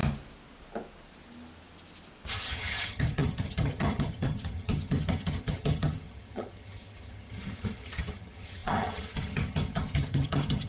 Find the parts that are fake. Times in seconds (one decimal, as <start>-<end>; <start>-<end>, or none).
2.3-10.7